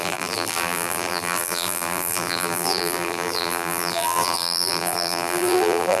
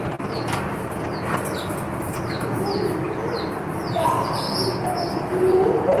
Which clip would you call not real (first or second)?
first